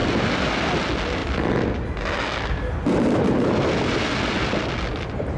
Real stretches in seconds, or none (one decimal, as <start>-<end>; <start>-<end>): 0.0-5.4